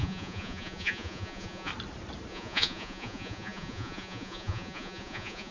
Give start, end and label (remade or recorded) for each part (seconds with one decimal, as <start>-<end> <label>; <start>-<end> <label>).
0.0-1.7 remade; 1.7-2.3 recorded; 2.3-5.5 remade